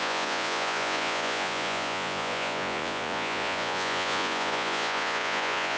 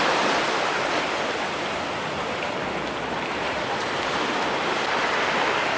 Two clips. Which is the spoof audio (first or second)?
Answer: first